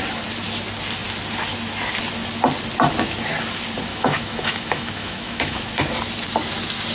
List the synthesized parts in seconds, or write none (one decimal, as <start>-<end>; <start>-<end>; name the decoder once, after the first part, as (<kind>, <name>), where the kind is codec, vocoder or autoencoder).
3.9-5.6 (autoencoder, DAC-VAE)